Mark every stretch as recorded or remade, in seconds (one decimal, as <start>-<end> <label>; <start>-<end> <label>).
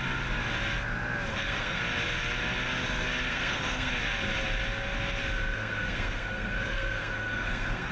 0.0-1.3 recorded; 1.3-1.8 remade; 1.8-3.3 recorded; 3.3-3.9 remade; 3.9-5.5 recorded; 5.5-7.9 remade